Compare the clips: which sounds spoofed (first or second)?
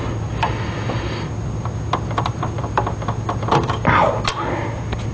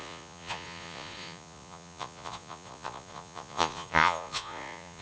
second